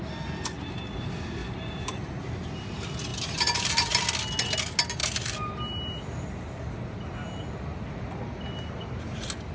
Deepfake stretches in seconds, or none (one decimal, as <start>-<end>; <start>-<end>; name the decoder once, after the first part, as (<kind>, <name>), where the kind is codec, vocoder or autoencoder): 1.4-2.2 (vocoder, BigVGAN v2); 3.1-4.0; 5.0-5.5